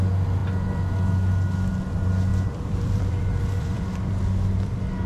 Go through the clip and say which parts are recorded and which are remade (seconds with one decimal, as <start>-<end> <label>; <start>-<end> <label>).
0.0-2.3 recorded; 2.3-4.2 remade; 4.2-5.1 recorded